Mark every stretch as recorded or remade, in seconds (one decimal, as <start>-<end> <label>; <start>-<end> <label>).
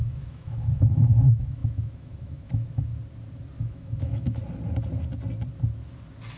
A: 0.0-2.9 remade; 2.9-3.6 recorded; 3.6-4.4 remade; 4.4-6.4 recorded